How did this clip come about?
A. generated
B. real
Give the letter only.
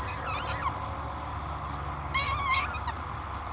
B